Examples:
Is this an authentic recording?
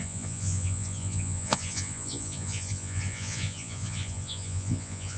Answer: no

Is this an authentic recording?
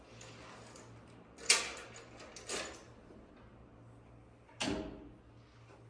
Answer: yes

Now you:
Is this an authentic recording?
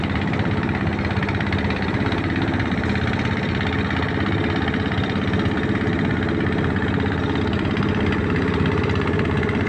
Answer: yes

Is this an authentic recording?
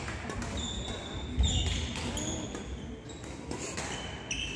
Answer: yes